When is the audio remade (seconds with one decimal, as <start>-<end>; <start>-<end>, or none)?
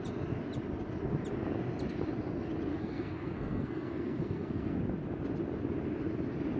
2.7-4.8